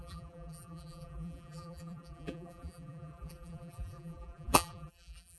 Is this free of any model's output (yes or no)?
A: no